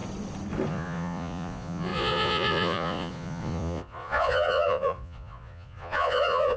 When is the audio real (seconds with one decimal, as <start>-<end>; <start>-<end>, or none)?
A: 0.0-0.7